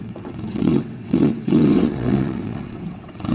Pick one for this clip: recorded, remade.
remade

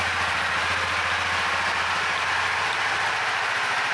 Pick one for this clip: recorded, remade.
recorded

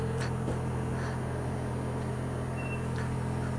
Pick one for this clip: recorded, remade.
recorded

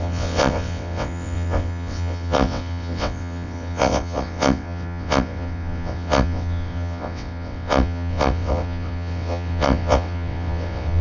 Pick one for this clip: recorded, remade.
remade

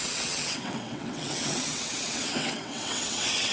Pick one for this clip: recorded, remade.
remade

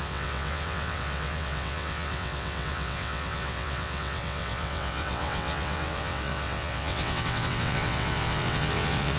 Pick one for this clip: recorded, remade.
remade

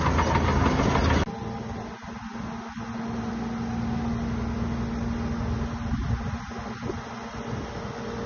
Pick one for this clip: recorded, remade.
recorded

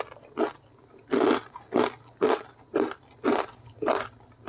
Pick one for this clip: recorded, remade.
recorded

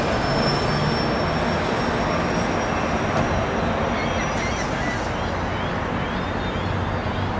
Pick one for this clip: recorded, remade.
recorded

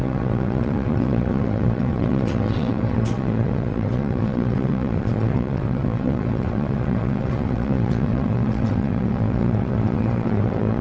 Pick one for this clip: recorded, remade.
remade